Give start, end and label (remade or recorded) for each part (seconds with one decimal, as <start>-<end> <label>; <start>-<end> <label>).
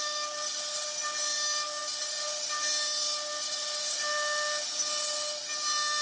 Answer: 0.0-6.0 recorded